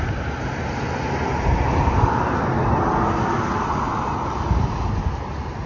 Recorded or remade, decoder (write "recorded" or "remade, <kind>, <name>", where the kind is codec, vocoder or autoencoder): recorded